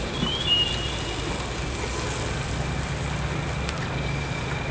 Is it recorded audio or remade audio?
recorded